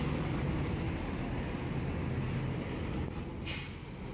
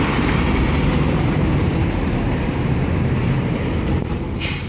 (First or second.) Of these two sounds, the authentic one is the first